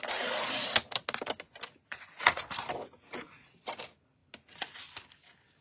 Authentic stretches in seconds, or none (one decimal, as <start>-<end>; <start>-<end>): 0.0-1.8; 2.4-2.8; 3.5-5.6